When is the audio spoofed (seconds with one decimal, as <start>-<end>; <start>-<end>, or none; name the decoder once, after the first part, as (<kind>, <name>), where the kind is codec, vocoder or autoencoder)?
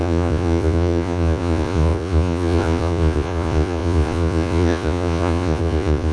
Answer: 0.0-6.1 (vocoder, Vocos)